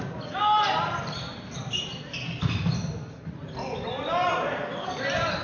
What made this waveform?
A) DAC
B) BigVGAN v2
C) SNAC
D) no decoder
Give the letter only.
D